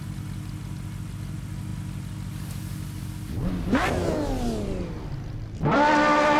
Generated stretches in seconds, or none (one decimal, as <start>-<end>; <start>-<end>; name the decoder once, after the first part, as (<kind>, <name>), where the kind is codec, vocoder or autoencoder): none